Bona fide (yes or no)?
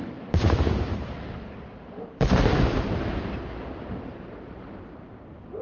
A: no